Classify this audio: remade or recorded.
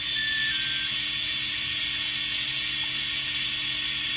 recorded